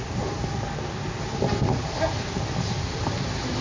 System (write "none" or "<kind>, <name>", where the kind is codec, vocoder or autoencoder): none